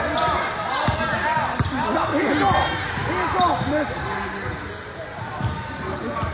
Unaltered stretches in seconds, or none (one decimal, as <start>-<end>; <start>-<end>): 0.0-6.3